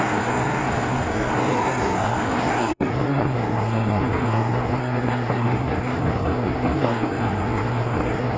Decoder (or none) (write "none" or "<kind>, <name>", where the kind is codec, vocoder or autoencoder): codec, SNAC